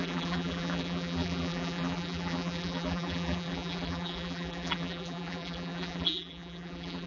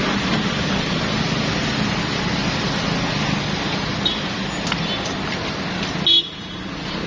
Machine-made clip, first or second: first